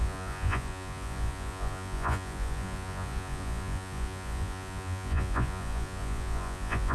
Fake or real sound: fake